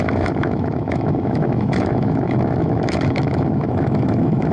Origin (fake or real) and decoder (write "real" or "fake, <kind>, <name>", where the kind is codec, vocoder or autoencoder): fake, autoencoder, DAC-VAE